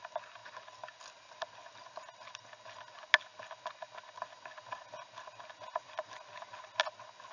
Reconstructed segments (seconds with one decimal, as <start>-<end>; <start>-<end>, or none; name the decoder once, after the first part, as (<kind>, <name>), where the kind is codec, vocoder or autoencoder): none